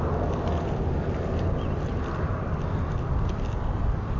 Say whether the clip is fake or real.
real